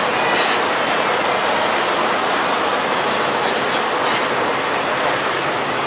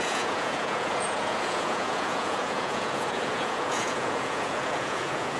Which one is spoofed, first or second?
second